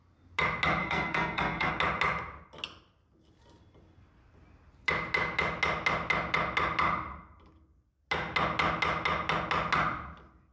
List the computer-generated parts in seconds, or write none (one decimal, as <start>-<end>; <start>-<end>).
0.8-1.7

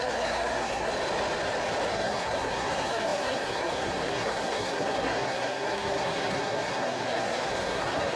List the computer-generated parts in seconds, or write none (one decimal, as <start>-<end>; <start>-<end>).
0.0-0.9; 1.9-8.2